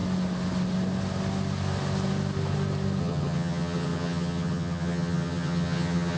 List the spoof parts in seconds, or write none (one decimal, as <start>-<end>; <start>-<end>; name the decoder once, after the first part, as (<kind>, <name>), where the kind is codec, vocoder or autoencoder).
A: 3.0-6.2 (vocoder, HiFi-GAN)